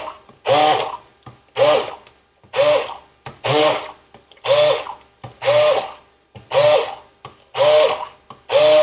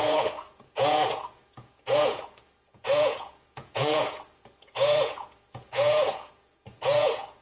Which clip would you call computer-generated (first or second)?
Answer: second